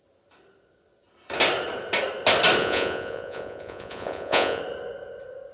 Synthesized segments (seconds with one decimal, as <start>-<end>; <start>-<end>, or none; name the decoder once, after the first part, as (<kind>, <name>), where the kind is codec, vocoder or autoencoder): 2.6-4.6 (vocoder, Vocos)